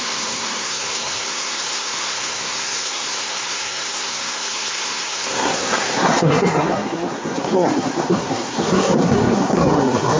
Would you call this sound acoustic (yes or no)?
no